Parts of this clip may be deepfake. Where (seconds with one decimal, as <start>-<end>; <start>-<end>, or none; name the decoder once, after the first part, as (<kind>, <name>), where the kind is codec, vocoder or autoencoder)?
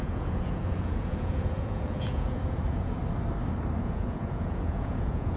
0.0-3.0 (vocoder, Vocos); 3.8-5.4